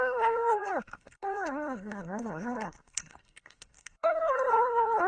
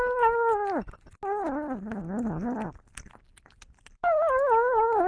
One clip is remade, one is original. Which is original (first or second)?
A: second